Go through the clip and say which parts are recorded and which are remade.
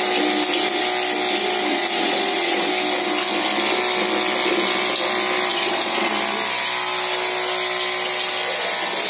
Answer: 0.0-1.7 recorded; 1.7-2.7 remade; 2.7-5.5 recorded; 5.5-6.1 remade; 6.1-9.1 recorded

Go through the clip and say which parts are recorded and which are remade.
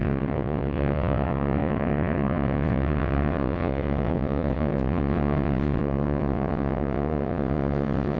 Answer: 0.0-8.2 remade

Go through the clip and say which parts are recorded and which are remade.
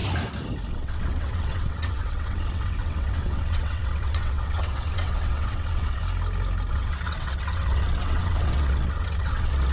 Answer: 0.0-0.7 recorded; 0.7-6.0 remade; 6.0-6.7 recorded; 6.7-9.7 remade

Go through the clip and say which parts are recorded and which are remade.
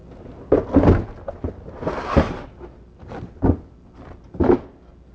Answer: 0.0-5.1 recorded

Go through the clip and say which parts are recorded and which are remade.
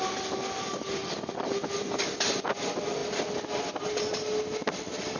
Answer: 0.0-5.2 recorded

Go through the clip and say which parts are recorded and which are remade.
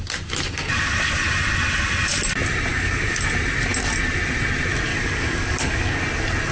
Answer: 0.0-2.7 recorded; 2.7-3.2 remade; 3.2-4.9 recorded; 4.9-6.0 remade; 6.0-6.5 recorded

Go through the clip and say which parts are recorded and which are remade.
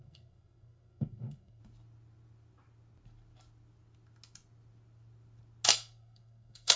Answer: 0.0-1.6 remade; 1.6-5.7 recorded; 5.7-6.8 remade